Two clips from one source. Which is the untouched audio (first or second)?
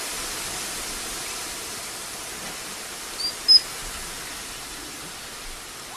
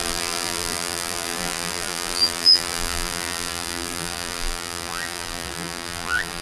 first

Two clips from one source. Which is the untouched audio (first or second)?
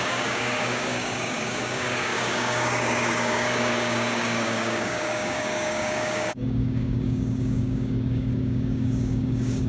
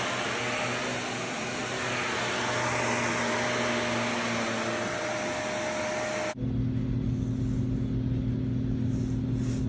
second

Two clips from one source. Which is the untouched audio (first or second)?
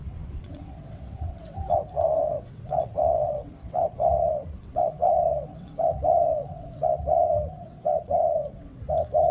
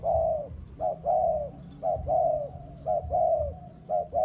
second